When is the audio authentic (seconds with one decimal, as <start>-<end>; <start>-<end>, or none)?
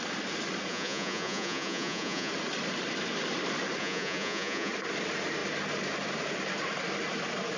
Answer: 0.0-0.7; 2.3-3.8; 4.7-7.6